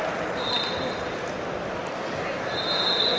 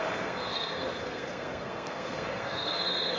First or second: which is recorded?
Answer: first